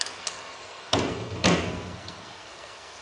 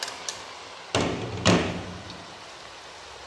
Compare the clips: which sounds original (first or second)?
second